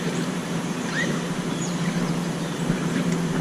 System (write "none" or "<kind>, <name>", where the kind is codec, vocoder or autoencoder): vocoder, BigVGAN v2